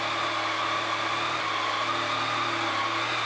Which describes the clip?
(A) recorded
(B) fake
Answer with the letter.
A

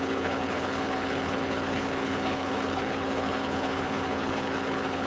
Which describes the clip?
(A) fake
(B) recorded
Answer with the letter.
A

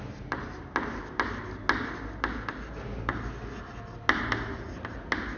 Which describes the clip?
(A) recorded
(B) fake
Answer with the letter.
A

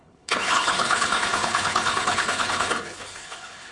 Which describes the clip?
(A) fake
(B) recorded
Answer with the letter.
A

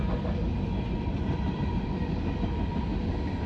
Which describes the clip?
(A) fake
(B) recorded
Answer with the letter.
B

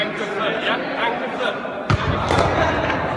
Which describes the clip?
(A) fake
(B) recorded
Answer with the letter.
B